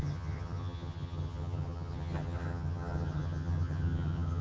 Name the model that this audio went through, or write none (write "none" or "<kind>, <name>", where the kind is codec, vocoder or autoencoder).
vocoder, HiFi-GAN